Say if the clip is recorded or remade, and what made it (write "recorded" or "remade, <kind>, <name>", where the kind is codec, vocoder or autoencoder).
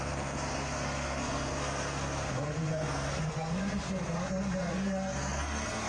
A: remade, codec, SNAC